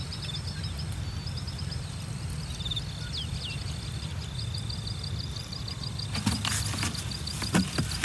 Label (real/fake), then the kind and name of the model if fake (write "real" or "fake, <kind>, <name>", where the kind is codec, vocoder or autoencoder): real